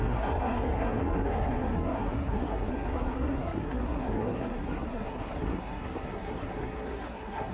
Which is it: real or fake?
fake